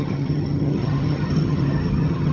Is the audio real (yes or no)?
no